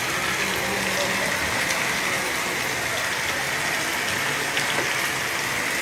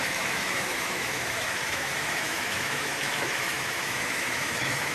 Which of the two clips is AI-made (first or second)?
second